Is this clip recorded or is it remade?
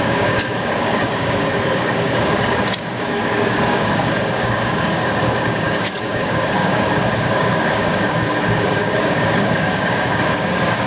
remade